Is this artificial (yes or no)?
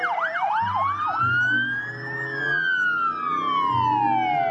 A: no